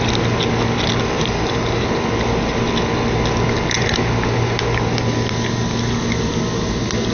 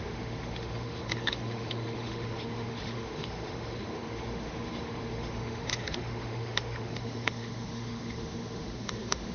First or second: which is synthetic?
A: second